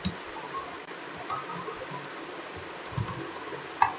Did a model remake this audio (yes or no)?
no